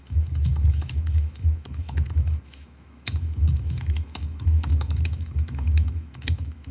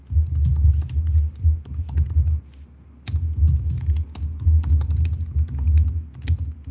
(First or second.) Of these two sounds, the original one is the second